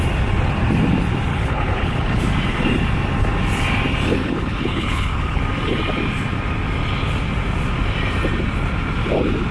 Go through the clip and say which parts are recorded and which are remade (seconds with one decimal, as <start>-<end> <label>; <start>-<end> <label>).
0.0-1.3 recorded; 1.3-2.2 remade; 2.2-4.2 recorded; 4.2-5.4 remade; 5.4-9.5 recorded